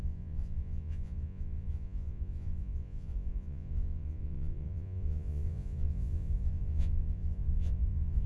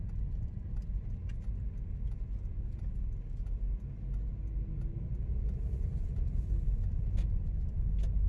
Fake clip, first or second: first